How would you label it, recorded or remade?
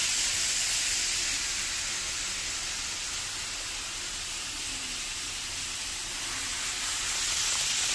recorded